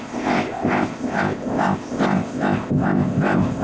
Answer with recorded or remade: remade